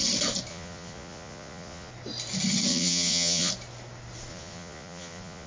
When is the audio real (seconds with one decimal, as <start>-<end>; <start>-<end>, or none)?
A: 0.0-0.5; 1.9-2.7; 3.5-4.3